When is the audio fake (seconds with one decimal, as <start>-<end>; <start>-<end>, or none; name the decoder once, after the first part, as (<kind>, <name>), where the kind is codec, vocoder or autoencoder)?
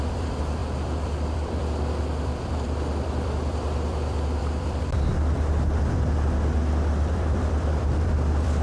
0.0-8.6 (vocoder, BigVGAN v2)